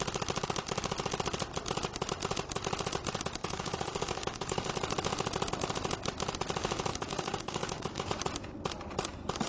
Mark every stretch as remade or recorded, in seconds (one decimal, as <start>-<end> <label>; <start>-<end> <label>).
0.0-3.4 recorded; 3.4-4.7 remade; 4.7-6.9 recorded; 6.9-8.1 remade; 8.1-9.5 recorded